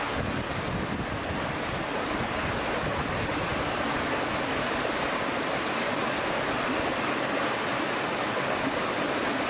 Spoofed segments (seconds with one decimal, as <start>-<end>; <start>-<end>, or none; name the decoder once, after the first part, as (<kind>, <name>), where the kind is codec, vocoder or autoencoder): none